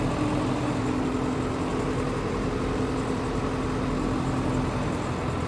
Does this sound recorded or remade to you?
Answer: recorded